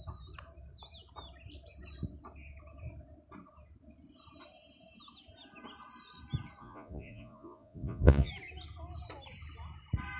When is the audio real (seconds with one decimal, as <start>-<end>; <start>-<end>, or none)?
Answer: 0.0-6.6; 8.3-10.2